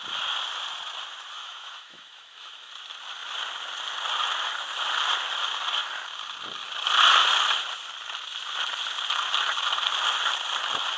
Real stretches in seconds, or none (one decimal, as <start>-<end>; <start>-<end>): 0.0-1.4; 2.7-11.0